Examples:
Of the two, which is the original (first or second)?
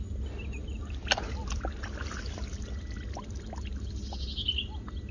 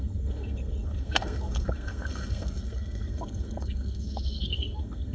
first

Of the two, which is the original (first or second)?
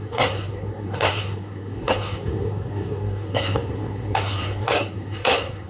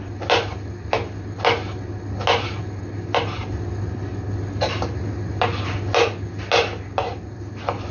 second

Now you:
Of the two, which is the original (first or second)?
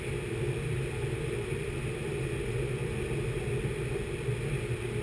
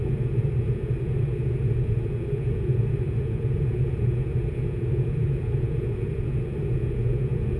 first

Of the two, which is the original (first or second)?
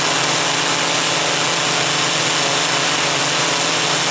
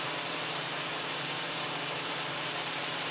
first